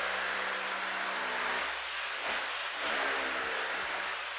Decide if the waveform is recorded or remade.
recorded